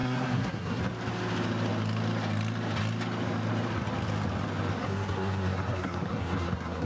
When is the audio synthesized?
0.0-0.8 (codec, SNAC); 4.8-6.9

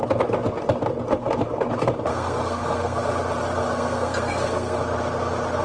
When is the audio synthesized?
2.1-3.0 (codec, SNAC); 3.6-4.8

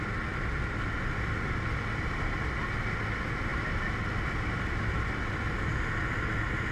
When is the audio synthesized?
none

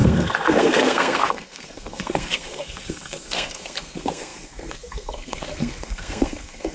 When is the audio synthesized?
0.0-6.7 (codec, SNAC)